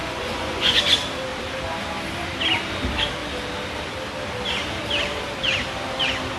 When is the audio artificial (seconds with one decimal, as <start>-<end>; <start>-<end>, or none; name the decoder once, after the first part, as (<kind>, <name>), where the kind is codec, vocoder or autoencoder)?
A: 0.0-0.8 (vocoder, Vocos)